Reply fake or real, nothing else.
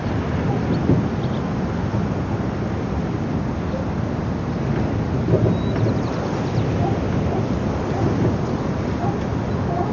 real